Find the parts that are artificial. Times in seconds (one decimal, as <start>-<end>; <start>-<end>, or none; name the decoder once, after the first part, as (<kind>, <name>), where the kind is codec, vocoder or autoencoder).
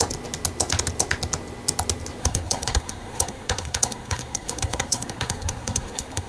2.2-6.3 (codec, SNAC)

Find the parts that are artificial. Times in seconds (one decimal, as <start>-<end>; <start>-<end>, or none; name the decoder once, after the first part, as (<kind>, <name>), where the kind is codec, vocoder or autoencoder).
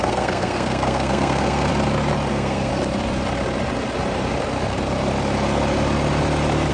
0.0-1.7 (codec, SNAC); 2.3-2.7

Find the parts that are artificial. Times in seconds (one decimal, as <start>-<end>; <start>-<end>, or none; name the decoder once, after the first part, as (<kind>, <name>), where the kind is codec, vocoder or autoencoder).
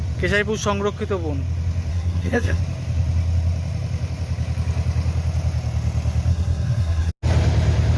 1.9-2.6 (codec, SNAC); 6.3-7.1